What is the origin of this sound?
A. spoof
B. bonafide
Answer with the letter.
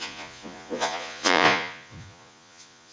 A